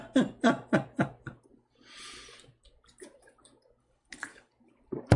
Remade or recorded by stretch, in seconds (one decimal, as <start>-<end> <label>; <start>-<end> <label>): 0.0-3.8 recorded; 3.8-4.5 remade; 4.5-5.2 recorded